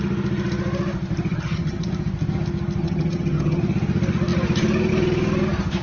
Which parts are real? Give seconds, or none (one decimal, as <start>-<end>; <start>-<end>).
0.0-1.3; 1.9-2.8; 3.6-5.8